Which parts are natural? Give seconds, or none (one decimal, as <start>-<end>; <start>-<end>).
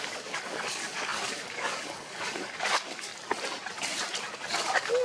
3.1-4.3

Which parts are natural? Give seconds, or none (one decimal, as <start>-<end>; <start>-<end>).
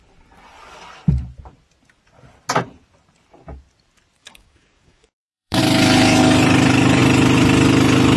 0.0-4.2; 5.6-8.2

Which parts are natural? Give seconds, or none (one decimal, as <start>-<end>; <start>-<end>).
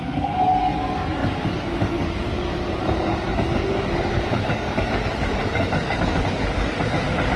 none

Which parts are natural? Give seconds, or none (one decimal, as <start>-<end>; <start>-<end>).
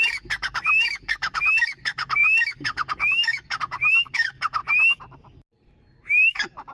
4.6-6.0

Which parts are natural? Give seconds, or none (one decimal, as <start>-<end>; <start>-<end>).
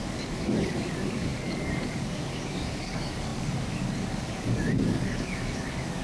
none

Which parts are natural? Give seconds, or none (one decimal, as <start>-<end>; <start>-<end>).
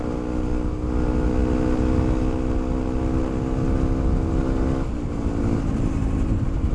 0.0-6.7